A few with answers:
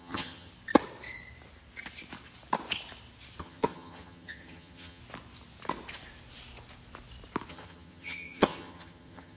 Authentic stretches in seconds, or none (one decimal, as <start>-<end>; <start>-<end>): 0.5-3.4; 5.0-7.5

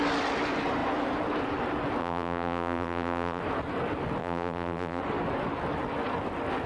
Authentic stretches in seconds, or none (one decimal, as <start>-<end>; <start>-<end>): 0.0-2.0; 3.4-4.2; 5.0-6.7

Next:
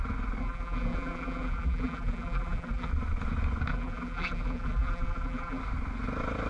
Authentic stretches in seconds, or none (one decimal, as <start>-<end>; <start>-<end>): 0.0-0.4; 2.9-3.7; 5.6-6.5